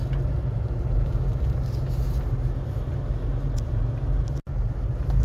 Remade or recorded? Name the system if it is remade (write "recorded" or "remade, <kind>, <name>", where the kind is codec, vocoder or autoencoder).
recorded